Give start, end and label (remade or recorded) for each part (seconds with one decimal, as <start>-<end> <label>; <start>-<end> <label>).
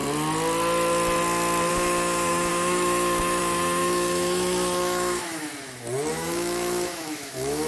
0.0-1.7 recorded; 1.7-5.5 remade; 5.5-6.1 recorded; 6.1-7.7 remade